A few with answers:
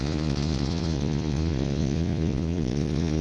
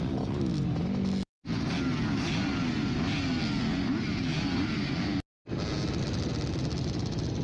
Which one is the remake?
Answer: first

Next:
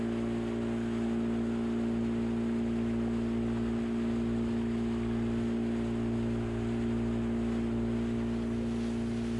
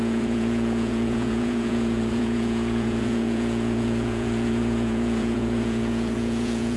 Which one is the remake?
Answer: second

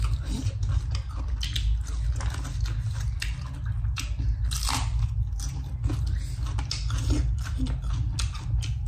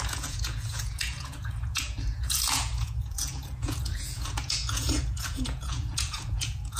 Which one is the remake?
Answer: second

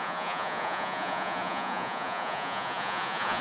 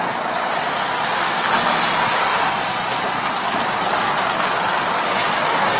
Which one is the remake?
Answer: first